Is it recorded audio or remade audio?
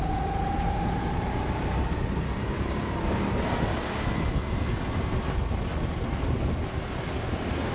recorded